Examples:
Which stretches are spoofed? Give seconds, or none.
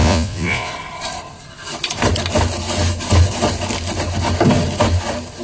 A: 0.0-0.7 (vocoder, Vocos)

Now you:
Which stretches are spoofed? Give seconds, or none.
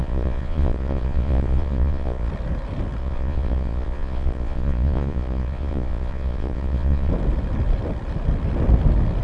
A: 0.0-2.3 (vocoder, Vocos); 3.0-7.1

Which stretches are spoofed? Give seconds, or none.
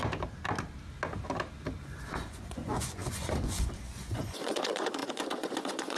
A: 1.8-6.0 (vocoder, Vocos)